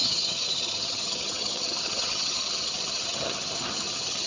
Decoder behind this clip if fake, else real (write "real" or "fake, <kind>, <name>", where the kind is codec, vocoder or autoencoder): fake, vocoder, HiFi-GAN